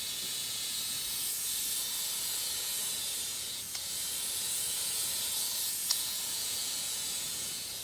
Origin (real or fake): fake